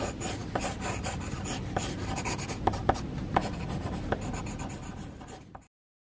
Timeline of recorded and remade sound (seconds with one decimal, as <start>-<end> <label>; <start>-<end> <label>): 0.0-6.1 recorded

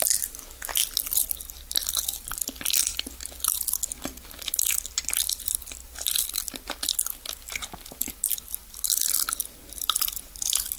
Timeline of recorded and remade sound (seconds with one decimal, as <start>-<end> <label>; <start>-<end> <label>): 0.0-10.8 recorded